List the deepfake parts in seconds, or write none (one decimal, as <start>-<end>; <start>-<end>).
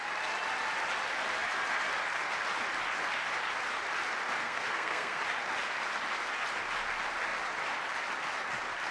4.4-5.2